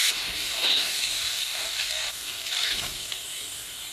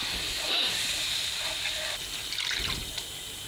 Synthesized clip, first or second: first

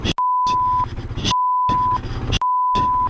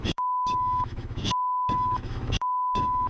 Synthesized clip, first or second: second